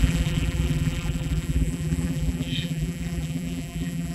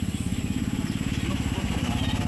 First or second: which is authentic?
second